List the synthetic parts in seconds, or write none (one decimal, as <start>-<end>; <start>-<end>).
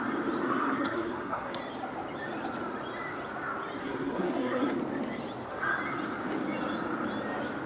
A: 0.4-1.6; 3.8-4.8